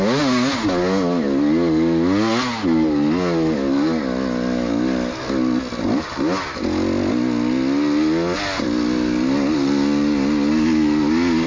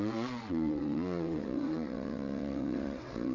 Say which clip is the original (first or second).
first